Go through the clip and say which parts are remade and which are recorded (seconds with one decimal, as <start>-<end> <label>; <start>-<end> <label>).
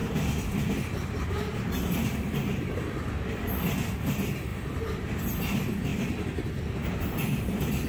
0.0-3.1 remade; 3.1-4.5 recorded; 4.5-5.3 remade; 5.3-5.9 recorded; 5.9-6.9 remade; 6.9-7.9 recorded